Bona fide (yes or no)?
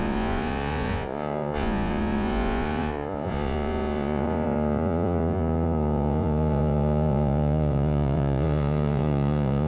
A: no